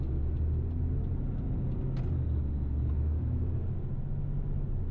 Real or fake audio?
real